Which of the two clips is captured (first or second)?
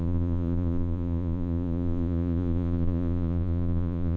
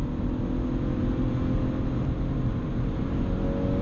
second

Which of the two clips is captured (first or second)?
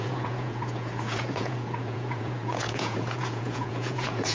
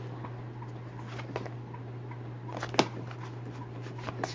second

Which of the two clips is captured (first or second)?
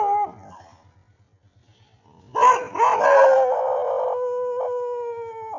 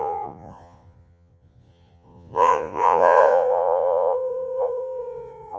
first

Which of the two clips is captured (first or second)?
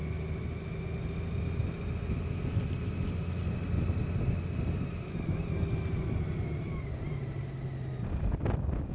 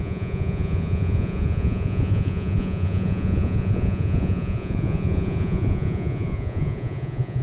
first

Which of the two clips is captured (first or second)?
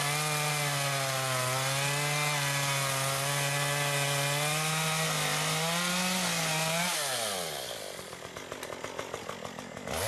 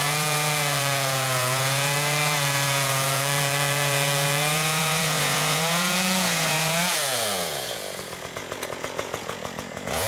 first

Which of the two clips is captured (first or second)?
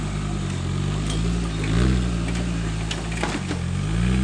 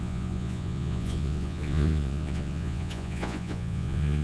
first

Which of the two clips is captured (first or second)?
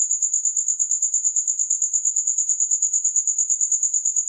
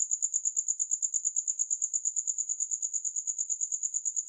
second